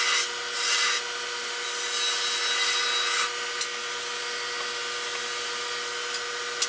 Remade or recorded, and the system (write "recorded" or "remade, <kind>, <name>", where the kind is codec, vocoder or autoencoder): recorded